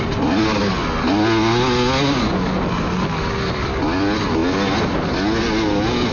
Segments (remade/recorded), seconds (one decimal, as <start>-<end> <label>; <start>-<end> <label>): 0.0-6.1 recorded